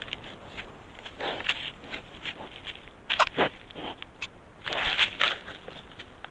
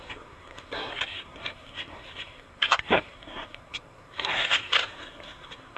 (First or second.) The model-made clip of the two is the second